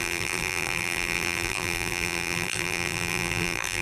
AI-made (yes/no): yes